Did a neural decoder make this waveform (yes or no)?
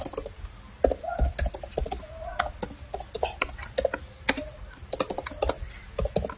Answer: no